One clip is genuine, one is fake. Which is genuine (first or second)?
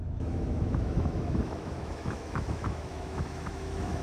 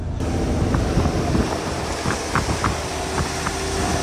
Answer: second